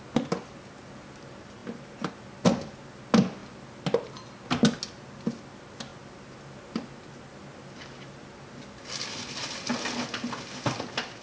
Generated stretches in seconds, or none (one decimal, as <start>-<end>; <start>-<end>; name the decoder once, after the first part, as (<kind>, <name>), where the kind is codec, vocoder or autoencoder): none